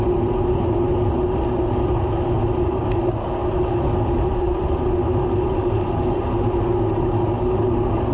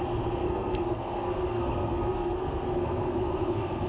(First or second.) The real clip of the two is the first